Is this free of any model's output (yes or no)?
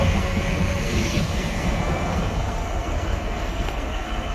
no